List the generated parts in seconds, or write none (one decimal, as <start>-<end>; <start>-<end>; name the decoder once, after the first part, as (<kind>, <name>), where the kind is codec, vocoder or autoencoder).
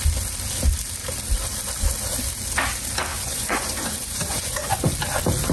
3.1-4.9 (vocoder, Vocos)